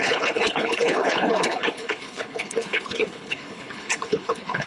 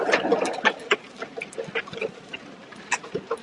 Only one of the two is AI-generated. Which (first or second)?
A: first